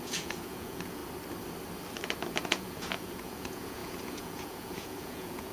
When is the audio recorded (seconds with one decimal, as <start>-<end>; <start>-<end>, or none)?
1.0-2.4